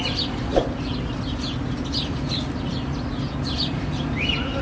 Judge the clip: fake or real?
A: real